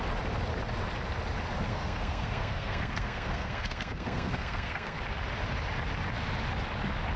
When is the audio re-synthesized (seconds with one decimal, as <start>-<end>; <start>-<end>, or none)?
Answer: 1.7-5.0